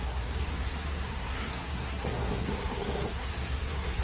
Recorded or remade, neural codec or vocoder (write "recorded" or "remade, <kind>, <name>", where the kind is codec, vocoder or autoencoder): remade, codec, SNAC